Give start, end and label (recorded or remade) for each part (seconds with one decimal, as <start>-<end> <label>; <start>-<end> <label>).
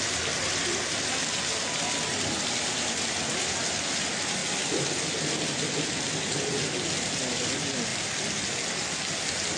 0.0-9.6 recorded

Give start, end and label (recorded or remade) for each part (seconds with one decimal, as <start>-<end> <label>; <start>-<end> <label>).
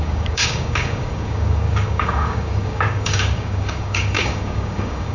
0.0-5.1 remade